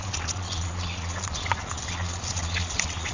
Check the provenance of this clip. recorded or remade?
remade